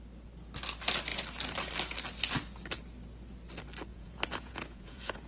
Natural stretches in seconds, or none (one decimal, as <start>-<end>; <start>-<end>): 0.0-3.9